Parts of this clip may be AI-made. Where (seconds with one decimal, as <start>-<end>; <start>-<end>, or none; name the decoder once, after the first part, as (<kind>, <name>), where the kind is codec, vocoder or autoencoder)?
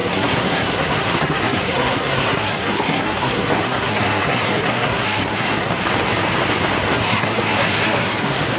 0.0-5.7 (codec, SNAC); 6.8-8.6